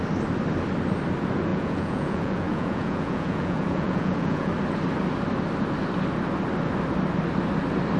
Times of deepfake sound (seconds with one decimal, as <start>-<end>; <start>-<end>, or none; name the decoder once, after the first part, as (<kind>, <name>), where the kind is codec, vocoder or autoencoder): 1.5-4.5 (vocoder, Vocos)